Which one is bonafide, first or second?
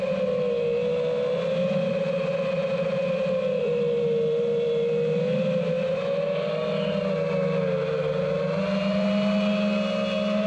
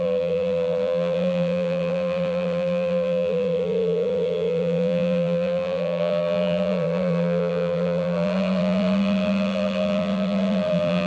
first